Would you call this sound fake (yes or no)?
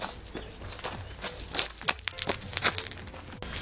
no